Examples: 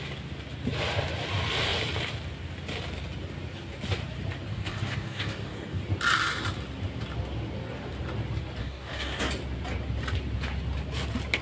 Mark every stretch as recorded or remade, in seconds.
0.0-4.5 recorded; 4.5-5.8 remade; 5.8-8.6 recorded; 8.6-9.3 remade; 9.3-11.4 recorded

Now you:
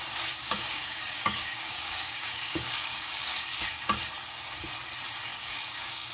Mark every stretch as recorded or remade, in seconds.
0.0-0.4 recorded; 0.4-3.9 remade; 3.9-5.3 recorded; 5.3-6.1 remade

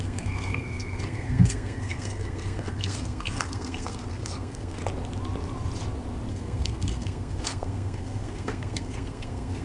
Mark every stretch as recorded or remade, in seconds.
0.0-4.8 remade; 4.8-6.3 recorded; 6.3-9.6 remade

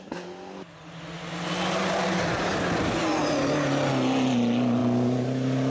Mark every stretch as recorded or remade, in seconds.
0.0-5.7 recorded

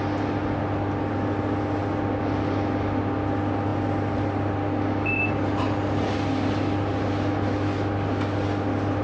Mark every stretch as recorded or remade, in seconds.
0.0-9.0 recorded

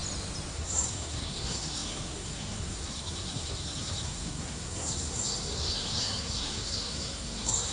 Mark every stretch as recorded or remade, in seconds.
0.0-0.5 recorded; 0.5-7.7 remade